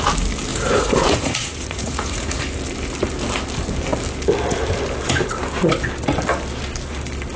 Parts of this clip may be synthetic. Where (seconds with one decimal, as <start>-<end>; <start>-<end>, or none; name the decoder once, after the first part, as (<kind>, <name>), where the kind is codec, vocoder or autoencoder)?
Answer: 0.5-2.4 (vocoder, Vocos)